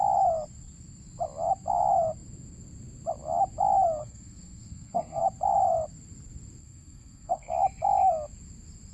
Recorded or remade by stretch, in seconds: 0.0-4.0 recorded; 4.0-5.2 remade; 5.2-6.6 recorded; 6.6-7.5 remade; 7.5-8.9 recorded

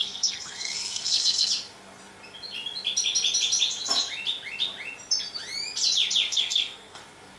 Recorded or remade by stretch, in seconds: 0.0-1.5 remade; 1.5-6.3 recorded; 6.3-7.0 remade; 7.0-7.4 recorded

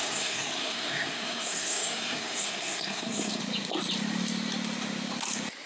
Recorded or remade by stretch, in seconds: 0.0-3.4 remade; 3.4-5.7 recorded

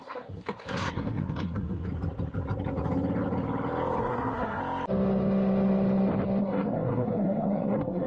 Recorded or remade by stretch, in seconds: 0.0-1.9 remade; 1.9-4.0 recorded; 4.0-4.6 remade; 4.6-6.4 recorded; 6.4-8.1 remade

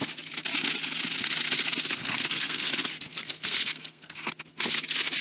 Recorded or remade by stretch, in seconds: 0.0-2.0 recorded; 2.0-2.7 remade; 2.7-3.1 recorded; 3.1-4.3 remade; 4.3-5.2 recorded

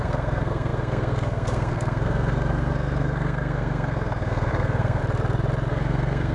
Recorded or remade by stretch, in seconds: 0.0-5.0 remade; 5.0-5.7 recorded; 5.7-6.3 remade

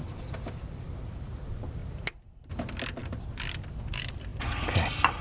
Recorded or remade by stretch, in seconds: 0.0-5.2 recorded

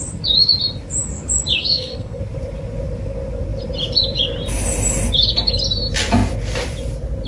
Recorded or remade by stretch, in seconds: 0.0-1.6 recorded; 1.6-2.2 remade; 2.2-7.3 recorded